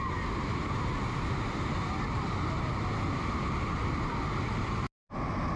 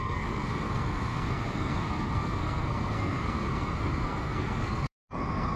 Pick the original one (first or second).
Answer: first